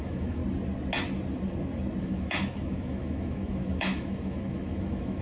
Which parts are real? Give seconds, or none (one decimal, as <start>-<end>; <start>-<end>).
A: 0.4-2.0